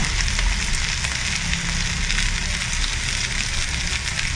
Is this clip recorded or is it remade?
recorded